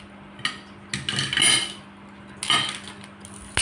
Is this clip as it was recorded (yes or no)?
yes